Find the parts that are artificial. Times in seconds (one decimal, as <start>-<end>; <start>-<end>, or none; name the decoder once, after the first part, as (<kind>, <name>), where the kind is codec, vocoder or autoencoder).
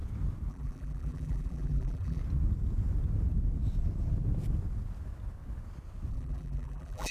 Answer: 0.5-2.2 (vocoder, BigVGAN v2); 6.1-7.1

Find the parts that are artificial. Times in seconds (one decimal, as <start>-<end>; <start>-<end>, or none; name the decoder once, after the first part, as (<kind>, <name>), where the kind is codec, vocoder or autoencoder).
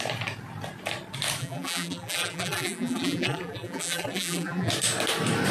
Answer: 1.4-4.7 (vocoder, BigVGAN v2)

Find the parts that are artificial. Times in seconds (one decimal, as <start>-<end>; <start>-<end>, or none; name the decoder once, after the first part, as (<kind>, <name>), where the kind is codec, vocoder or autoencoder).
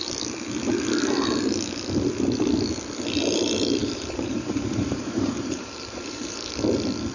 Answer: 3.8-6.5 (vocoder, BigVGAN v2)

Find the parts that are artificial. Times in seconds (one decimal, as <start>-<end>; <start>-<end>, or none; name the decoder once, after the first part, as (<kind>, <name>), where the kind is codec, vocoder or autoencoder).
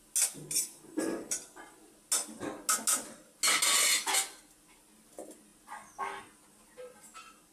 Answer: none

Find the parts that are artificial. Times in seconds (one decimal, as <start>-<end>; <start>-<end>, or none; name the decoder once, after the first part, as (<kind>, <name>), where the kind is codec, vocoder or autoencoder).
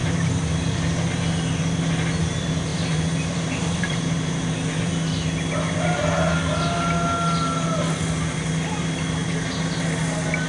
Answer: 2.7-4.5 (vocoder, BigVGAN v2)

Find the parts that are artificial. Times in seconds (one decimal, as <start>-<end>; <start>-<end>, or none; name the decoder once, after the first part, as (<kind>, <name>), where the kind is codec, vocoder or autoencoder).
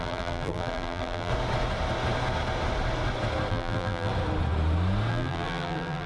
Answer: 0.0-1.3 (vocoder, BigVGAN v2); 3.5-4.1; 5.1-6.1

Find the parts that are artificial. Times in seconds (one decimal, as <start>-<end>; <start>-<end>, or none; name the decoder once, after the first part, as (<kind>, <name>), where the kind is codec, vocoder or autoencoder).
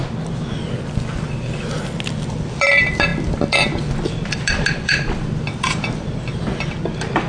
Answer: 2.3-7.3 (vocoder, BigVGAN v2)